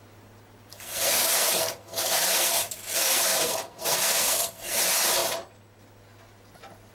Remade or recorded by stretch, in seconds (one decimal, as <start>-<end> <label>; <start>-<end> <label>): 0.0-0.7 recorded; 0.7-4.8 remade; 4.8-6.9 recorded